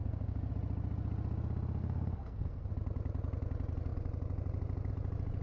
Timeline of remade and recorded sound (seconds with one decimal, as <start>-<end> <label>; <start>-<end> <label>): 0.0-0.5 remade; 0.5-1.8 recorded; 1.8-2.7 remade; 2.7-5.4 recorded